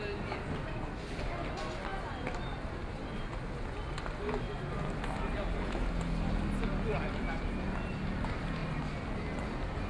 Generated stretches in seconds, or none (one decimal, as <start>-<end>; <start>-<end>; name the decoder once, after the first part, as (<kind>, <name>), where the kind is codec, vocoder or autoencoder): none

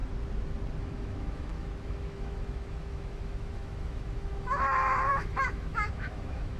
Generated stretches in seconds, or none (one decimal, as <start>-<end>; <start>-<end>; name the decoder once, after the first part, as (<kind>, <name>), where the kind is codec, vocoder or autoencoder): 0.8-6.6 (autoencoder, DAC-VAE)

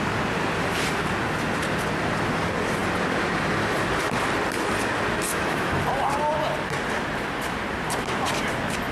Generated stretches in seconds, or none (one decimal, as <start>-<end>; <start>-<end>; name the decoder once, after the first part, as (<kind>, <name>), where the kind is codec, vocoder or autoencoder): 5.3-5.8 (autoencoder, DAC-VAE)

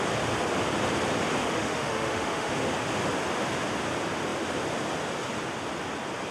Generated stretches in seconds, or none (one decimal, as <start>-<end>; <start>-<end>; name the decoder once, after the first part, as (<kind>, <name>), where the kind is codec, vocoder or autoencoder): 1.4-2.5 (autoencoder, DAC-VAE)